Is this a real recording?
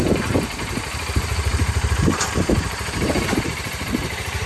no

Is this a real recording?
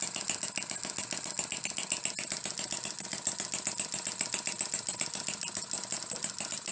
yes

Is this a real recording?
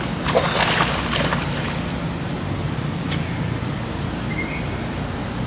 yes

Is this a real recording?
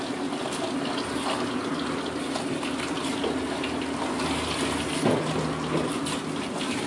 yes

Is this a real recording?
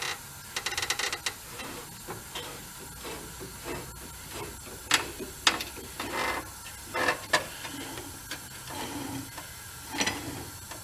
yes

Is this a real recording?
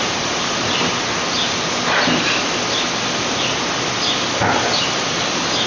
yes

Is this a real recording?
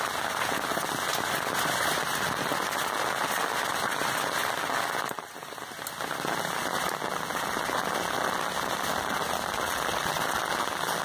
yes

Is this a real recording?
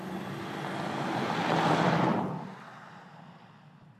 yes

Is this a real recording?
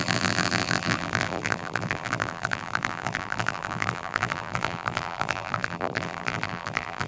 no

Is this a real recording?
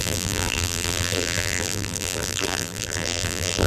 no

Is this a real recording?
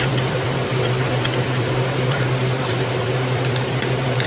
no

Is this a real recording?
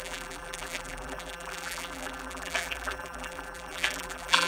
no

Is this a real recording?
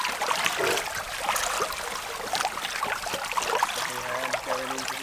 yes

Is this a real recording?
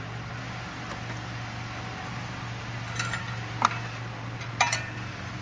yes